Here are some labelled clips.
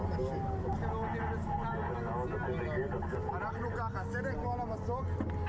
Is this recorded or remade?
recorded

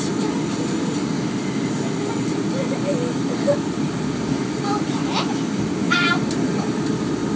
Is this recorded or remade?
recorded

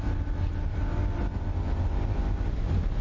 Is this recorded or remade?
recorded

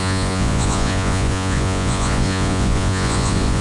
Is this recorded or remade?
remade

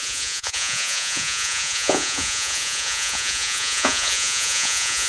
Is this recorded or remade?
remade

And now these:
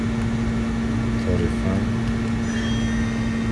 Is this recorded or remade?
recorded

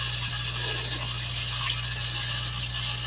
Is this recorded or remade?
recorded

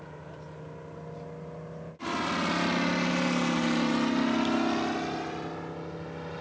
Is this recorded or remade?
recorded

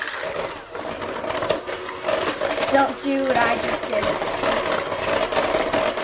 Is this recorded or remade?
recorded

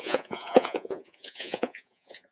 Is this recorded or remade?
remade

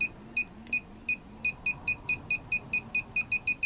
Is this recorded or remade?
recorded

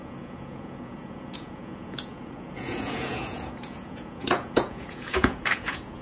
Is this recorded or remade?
remade